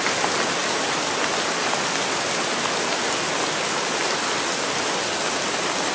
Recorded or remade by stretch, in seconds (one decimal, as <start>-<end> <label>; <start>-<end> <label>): 0.0-5.9 recorded